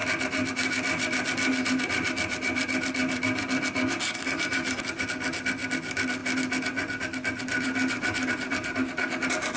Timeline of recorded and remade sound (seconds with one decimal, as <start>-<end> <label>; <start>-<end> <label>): 0.0-9.6 recorded